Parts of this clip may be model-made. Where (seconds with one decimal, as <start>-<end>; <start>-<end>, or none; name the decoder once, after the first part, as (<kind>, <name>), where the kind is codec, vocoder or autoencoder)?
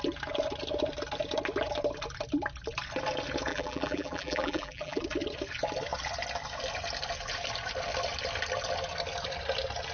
3.5-5.0 (vocoder, BigVGAN v2)